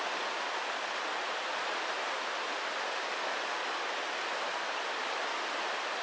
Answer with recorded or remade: recorded